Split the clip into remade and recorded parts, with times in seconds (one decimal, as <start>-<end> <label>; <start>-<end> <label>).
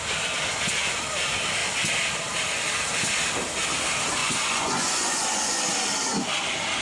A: 0.0-4.2 recorded; 4.2-5.6 remade; 5.6-6.8 recorded